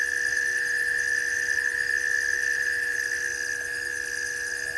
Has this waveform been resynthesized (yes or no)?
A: no